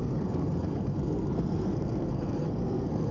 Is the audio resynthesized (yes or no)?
yes